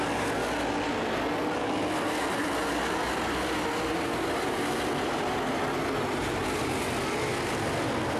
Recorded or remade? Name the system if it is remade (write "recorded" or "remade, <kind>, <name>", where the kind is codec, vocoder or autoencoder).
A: recorded